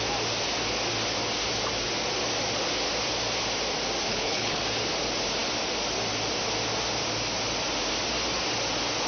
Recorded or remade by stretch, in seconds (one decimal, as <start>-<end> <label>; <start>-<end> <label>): 0.0-4.1 recorded; 4.1-4.6 remade; 4.6-9.1 recorded